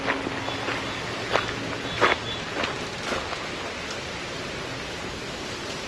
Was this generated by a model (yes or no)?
no